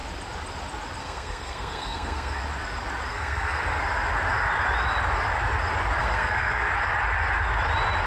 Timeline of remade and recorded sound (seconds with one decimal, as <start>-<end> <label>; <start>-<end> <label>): 0.0-1.0 recorded; 1.0-2.4 remade; 2.4-3.1 recorded; 3.1-3.8 remade; 3.8-6.0 recorded; 6.0-6.7 remade; 6.7-8.1 recorded